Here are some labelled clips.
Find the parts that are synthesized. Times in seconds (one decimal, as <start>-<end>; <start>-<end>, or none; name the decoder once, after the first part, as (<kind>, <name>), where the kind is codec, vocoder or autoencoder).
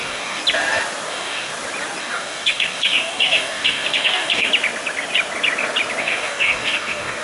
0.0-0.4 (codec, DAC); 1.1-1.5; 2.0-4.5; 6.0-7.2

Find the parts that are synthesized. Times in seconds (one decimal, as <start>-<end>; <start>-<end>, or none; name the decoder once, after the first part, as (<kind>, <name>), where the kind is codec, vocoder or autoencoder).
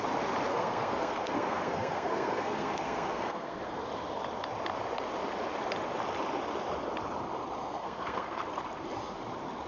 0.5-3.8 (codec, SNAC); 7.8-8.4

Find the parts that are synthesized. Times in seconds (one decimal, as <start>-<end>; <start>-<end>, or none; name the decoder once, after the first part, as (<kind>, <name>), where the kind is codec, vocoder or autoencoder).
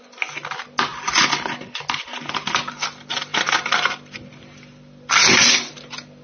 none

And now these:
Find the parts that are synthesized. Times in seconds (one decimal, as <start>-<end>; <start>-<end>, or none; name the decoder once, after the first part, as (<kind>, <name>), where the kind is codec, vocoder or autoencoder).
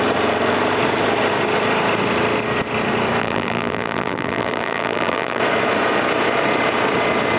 3.2-5.4 (vocoder, BigVGAN v2)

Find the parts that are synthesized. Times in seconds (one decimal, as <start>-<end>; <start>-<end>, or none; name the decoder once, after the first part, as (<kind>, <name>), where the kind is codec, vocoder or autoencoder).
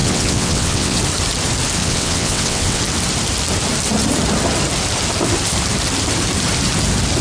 0.0-1.0 (vocoder, WaveNeXt); 1.8-2.8